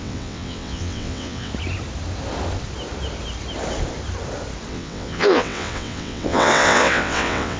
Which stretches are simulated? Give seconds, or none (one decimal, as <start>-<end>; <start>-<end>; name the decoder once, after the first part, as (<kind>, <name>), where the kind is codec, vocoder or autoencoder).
0.0-1.5 (vocoder, WaveNeXt); 4.7-7.6